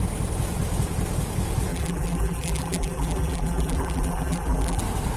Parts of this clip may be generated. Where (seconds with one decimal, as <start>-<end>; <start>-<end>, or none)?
1.7-4.8